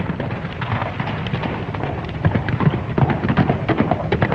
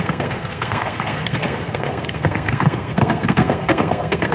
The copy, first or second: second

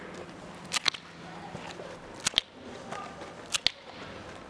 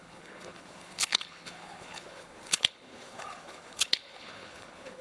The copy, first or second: second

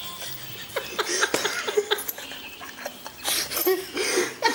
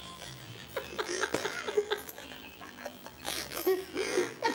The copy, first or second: second